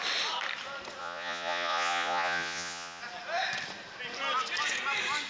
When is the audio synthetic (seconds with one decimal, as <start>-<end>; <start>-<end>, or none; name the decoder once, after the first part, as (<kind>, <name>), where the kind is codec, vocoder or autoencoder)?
1.0-3.0 (vocoder, Vocos)